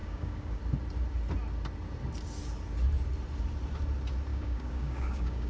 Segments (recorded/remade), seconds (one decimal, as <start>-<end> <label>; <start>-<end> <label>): 0.0-0.6 remade; 0.6-4.3 recorded; 4.3-5.5 remade